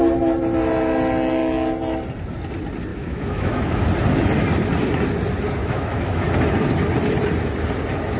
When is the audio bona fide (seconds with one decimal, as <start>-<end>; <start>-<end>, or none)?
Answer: 0.0-2.9; 3.8-5.6; 6.3-8.2